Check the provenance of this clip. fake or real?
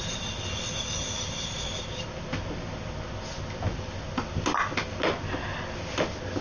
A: real